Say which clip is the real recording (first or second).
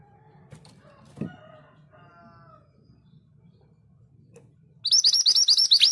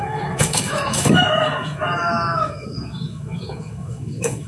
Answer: first